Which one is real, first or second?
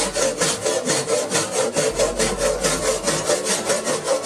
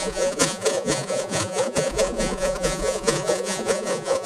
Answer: first